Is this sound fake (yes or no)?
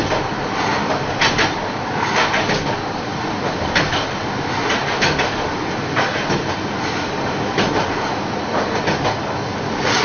no